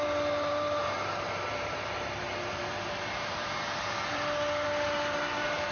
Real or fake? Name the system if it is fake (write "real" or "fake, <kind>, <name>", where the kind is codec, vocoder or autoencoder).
fake, vocoder, BigVGAN v2